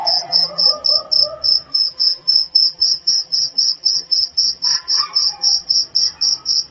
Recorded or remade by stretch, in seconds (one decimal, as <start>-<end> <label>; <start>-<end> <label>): 0.0-0.8 remade; 0.8-1.7 recorded; 1.7-5.7 remade; 5.7-6.7 recorded